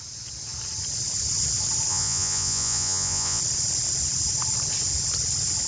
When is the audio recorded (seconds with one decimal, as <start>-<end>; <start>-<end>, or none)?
0.0-1.9; 3.4-5.7